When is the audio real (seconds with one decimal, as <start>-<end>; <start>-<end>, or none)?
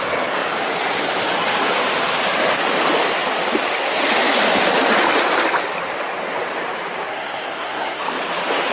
0.0-7.1; 8.0-8.7